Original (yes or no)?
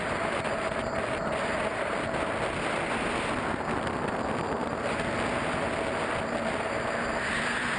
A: yes